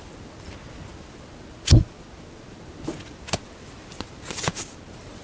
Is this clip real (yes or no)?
yes